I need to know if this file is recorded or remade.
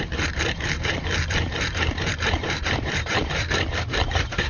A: remade